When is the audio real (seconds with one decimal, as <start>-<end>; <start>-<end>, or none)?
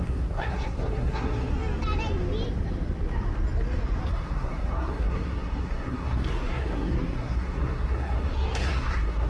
1.5-4.1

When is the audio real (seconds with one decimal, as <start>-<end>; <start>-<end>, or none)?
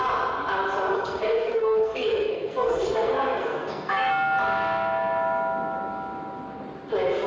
0.0-0.9; 4.1-7.3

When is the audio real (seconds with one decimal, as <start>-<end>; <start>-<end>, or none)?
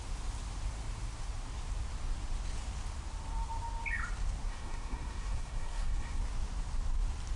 0.0-4.5; 6.2-7.4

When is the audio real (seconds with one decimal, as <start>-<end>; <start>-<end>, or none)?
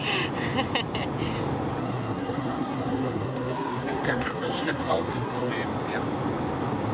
0.0-1.8; 5.5-6.9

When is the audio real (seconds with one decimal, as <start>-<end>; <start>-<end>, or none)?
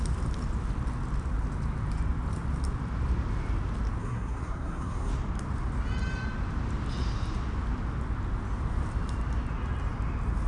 0.0-4.0; 5.1-10.5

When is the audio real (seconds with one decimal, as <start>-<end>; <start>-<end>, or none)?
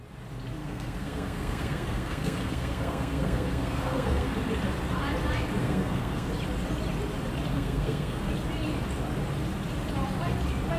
0.0-0.6; 4.3-5.6; 6.3-7.5; 8.3-10.8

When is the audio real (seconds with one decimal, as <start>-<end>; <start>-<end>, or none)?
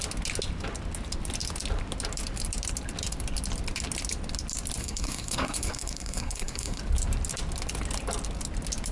0.0-4.8; 6.8-8.9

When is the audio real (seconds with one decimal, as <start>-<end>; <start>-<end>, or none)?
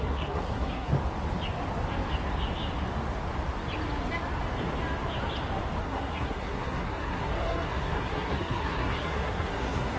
0.9-5.8